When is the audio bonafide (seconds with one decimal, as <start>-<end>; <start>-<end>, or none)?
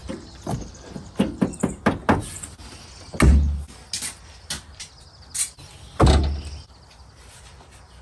0.0-8.0